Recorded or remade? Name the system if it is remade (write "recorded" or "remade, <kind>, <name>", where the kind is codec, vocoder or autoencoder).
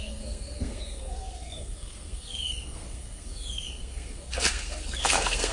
remade, codec, SNAC